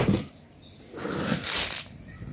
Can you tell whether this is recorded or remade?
recorded